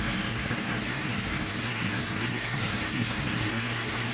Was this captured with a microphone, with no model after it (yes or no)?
no